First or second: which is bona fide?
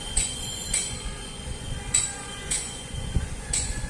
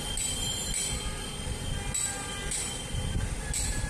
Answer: second